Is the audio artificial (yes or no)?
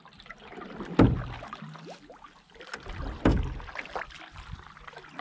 no